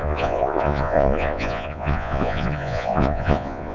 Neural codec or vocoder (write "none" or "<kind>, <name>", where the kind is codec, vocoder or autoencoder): vocoder, Vocos